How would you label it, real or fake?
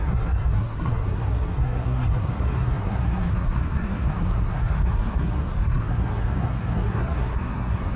fake